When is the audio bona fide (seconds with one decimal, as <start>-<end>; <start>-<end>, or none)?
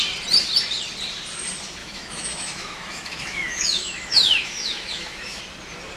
0.0-1.8; 5.4-6.0